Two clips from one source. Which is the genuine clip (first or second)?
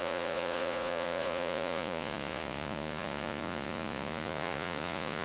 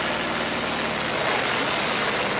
second